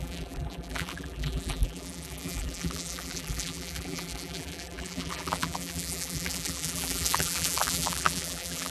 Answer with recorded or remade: remade